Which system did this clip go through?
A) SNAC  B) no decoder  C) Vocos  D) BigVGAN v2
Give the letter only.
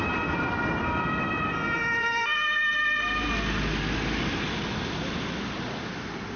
B